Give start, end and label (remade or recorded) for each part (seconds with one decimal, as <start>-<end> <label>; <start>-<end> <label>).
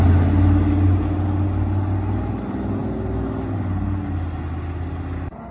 0.0-5.5 recorded